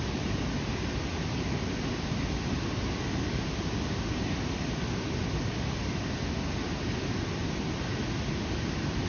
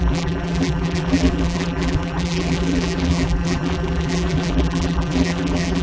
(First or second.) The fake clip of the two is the second